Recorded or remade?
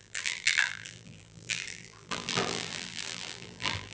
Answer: remade